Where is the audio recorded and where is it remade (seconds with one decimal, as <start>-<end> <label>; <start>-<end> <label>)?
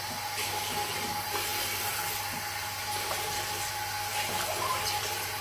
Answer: 0.0-5.4 recorded